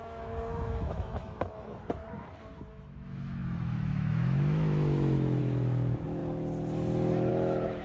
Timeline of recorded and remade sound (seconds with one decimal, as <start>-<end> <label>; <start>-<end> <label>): 0.0-2.0 remade; 2.0-2.7 recorded; 2.7-6.2 remade; 6.2-7.3 recorded; 7.3-7.8 remade